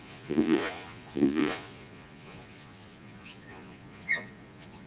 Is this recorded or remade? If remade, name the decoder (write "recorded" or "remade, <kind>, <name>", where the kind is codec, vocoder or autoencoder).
remade, vocoder, Vocos